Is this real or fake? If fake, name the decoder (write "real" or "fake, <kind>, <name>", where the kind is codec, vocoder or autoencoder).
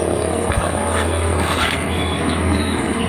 fake, codec, SNAC